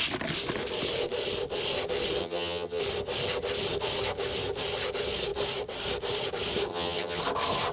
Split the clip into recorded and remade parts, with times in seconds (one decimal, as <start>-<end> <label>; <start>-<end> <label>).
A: 0.0-2.2 recorded; 2.2-2.8 remade; 2.8-6.7 recorded; 6.7-7.2 remade; 7.2-7.7 recorded